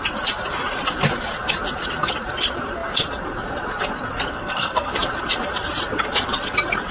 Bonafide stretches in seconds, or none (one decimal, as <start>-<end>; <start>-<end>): 0.0-4.3; 4.9-6.9